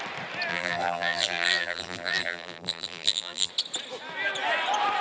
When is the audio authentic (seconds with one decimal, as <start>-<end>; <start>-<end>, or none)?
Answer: 0.0-0.5; 3.5-5.0